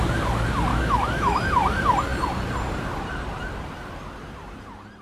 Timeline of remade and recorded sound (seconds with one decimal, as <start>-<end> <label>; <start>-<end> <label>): 0.0-0.7 recorded; 0.7-1.4 remade; 1.4-5.0 recorded